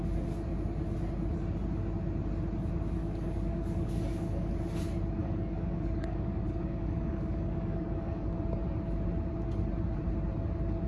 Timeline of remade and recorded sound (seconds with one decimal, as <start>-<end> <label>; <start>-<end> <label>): 0.0-3.0 recorded; 3.0-4.5 remade; 4.5-5.2 recorded; 5.2-8.4 remade; 8.4-10.9 recorded